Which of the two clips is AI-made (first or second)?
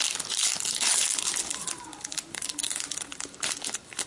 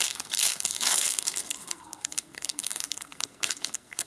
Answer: second